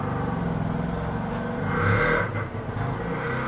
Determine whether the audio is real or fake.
real